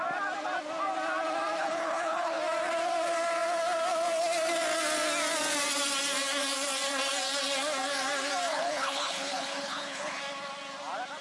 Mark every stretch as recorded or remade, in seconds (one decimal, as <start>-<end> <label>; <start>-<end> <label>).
0.0-1.6 recorded; 1.6-2.4 remade; 2.4-8.5 recorded; 8.5-10.2 remade; 10.2-11.2 recorded